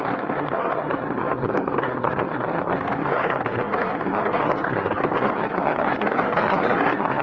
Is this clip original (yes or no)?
no